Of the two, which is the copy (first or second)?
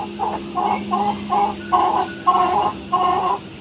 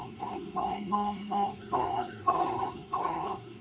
second